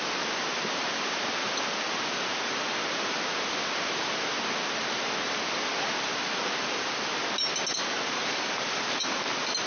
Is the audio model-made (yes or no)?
no